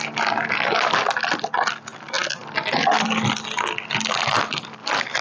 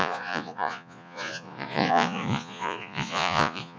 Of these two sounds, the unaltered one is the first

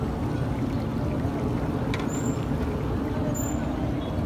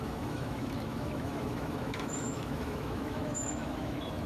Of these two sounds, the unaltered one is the first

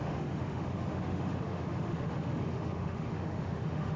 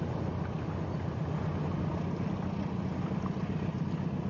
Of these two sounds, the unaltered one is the second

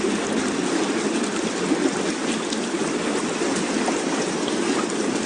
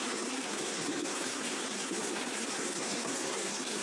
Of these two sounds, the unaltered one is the first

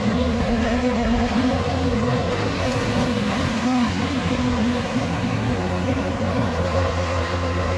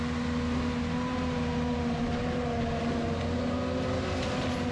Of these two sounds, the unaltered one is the second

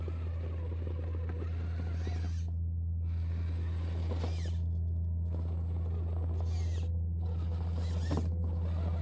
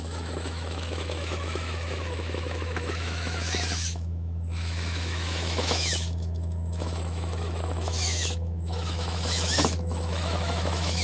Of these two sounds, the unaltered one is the first